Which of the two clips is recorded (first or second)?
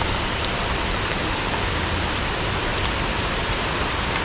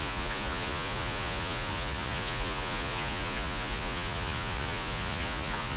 first